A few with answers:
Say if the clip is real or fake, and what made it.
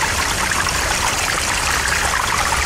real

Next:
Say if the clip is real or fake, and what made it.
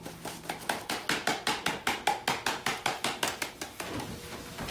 real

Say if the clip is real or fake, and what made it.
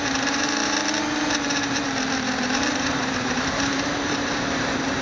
fake, vocoder, BigVGAN v2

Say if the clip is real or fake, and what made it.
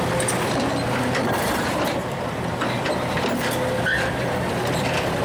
fake, vocoder, BigVGAN v2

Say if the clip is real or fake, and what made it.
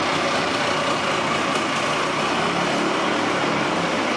real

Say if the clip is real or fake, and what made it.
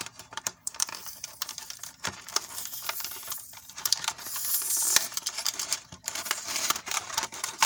fake, vocoder, BigVGAN v2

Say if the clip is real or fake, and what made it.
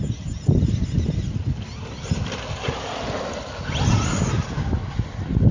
real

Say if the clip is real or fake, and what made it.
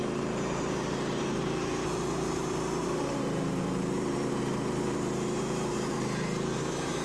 fake, vocoder, BigVGAN v2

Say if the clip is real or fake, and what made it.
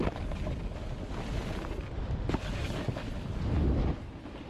real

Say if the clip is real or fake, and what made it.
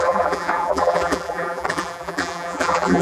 fake, vocoder, BigVGAN v2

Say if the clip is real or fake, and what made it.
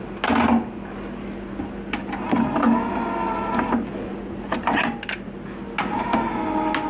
real